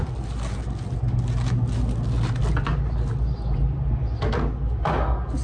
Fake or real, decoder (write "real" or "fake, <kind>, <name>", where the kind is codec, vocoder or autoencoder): real